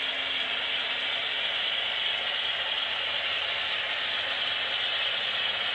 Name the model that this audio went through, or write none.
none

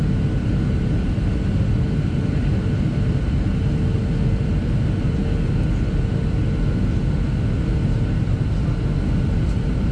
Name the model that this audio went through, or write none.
none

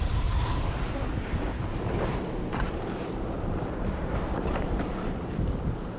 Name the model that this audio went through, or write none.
vocoder, BigVGAN v2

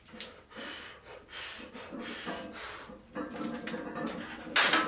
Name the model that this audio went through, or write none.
none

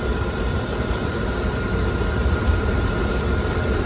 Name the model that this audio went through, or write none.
vocoder, BigVGAN v2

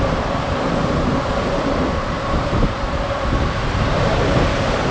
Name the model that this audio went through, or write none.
vocoder, BigVGAN v2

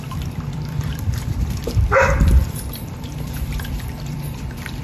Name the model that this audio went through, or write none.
vocoder, BigVGAN v2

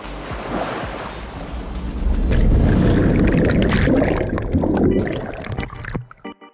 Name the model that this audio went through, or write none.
none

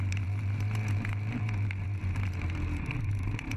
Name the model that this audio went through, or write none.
vocoder, BigVGAN v2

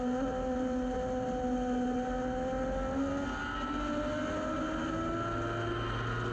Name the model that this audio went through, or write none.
none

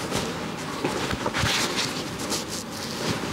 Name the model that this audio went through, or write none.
none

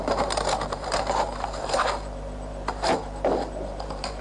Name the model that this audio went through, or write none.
vocoder, BigVGAN v2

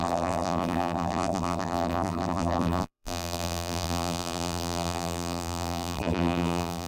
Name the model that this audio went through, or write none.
vocoder, BigVGAN v2